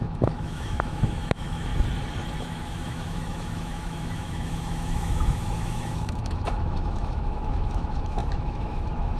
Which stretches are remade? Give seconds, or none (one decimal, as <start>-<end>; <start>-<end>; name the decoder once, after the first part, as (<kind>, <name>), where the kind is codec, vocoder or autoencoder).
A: 0.0-1.7 (autoencoder, DAC-VAE); 2.4-9.2